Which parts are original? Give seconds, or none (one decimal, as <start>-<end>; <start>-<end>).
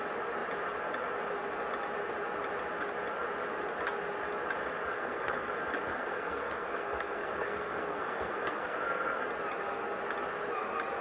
0.0-4.9; 5.5-5.9; 9.2-11.0